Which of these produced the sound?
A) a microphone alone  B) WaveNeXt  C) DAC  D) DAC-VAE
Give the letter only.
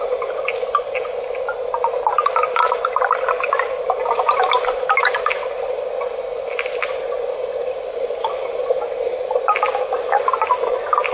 A